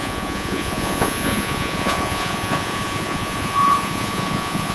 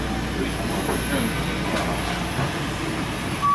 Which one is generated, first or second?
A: first